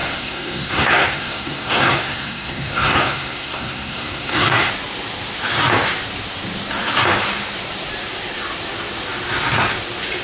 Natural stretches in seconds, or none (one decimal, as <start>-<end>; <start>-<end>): 4.7-10.2